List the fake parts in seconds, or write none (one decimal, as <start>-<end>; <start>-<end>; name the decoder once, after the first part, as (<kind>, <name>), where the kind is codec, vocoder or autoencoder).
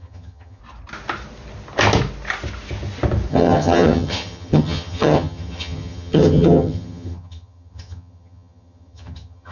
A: 0.0-0.6 (vocoder, HiFi-GAN); 3.3-9.5